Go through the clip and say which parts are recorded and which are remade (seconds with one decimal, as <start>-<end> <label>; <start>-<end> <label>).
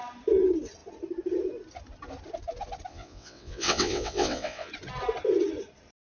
0.0-2.9 recorded; 2.9-4.7 remade; 4.7-6.0 recorded